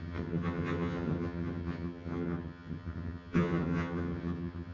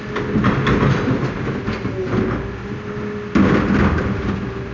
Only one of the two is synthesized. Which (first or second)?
first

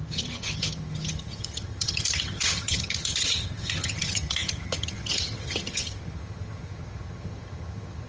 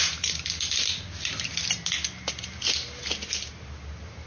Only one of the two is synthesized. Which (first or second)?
first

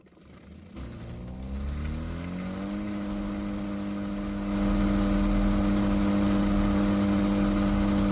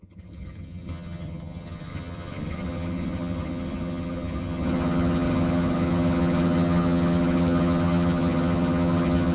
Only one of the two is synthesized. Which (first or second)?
second